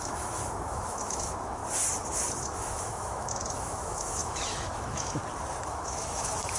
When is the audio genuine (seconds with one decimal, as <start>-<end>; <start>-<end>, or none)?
1.6-2.4; 5.2-5.7